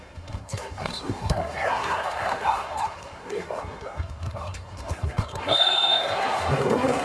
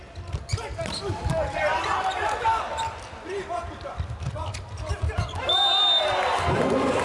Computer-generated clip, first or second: first